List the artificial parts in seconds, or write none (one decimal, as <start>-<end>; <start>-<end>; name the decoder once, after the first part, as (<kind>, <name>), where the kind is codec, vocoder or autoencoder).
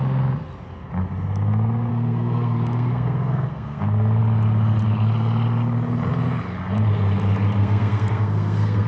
1.9-3.8 (codec, SNAC); 7.6-8.9